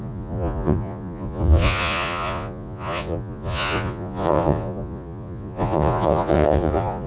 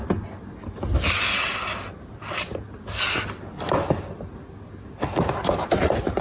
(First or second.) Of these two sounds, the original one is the second